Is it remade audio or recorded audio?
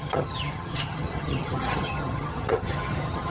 remade